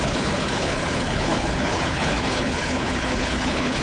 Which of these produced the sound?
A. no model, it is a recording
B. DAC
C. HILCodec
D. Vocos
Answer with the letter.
C